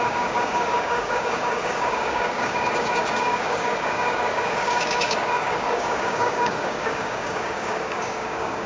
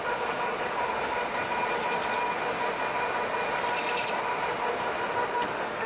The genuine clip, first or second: second